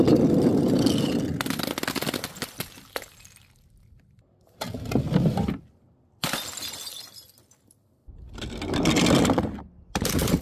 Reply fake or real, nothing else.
real